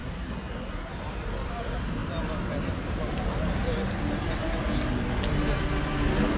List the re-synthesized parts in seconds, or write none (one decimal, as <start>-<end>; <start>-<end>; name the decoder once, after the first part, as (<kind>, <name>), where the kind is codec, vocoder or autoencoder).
0.0-0.9 (codec, SNAC)